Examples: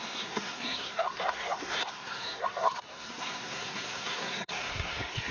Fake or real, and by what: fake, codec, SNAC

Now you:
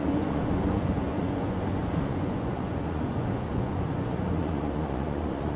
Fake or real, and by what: fake, vocoder, Vocos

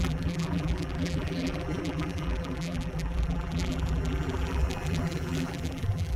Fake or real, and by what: fake, vocoder, BigVGAN v2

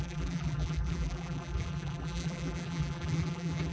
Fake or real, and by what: fake, vocoder, BigVGAN v2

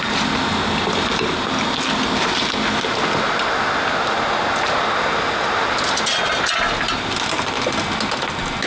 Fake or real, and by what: real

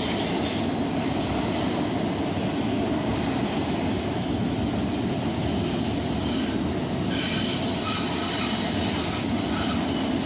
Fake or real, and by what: real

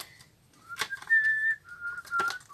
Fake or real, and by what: real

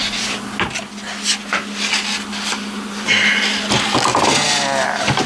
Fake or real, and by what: real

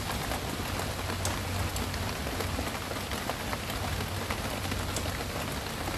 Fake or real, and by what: real